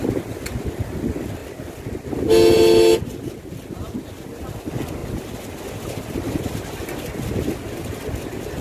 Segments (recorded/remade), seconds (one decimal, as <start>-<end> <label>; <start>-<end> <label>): 0.0-8.6 recorded